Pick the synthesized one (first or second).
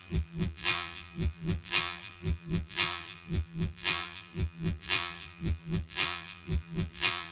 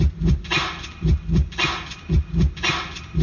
first